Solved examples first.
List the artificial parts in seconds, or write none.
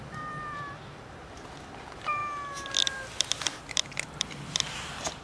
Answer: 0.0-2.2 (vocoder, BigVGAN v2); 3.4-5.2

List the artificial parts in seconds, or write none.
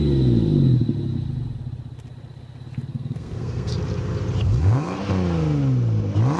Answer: 2.9-3.7 (codec, SNAC); 4.4-5.0